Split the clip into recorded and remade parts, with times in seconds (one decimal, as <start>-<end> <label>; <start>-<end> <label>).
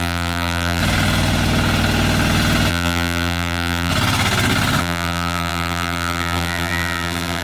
0.0-0.8 remade; 0.8-2.7 recorded; 2.7-3.9 remade; 3.9-4.8 recorded; 4.8-7.4 remade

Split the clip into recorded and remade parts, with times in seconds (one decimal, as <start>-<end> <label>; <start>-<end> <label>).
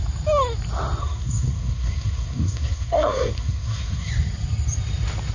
0.0-1.0 recorded; 1.0-4.1 remade; 4.1-5.3 recorded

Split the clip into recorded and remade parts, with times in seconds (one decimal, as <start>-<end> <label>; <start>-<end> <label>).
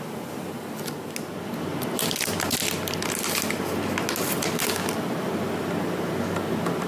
0.0-6.9 recorded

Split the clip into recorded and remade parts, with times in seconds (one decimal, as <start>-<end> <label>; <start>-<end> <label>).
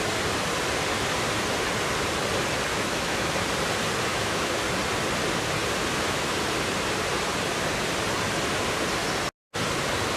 0.0-2.7 recorded; 2.7-3.3 remade; 3.3-4.1 recorded; 4.1-4.6 remade; 4.6-10.2 recorded